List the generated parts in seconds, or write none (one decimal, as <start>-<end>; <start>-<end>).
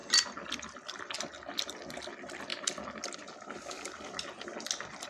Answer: none